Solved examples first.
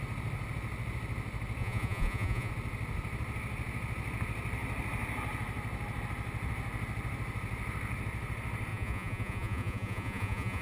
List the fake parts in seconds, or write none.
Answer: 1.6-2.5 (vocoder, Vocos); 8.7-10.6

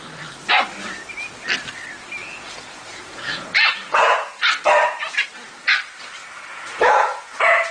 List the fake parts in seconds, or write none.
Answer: 2.2-4.4 (vocoder, Vocos); 6.5-7.7